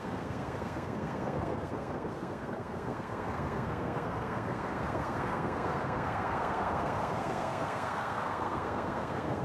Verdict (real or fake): fake